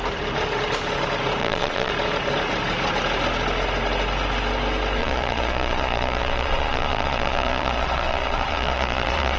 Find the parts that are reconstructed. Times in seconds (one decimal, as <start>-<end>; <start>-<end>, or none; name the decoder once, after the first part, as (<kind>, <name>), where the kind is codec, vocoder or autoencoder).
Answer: 1.4-1.9 (vocoder, Vocos); 5.0-9.4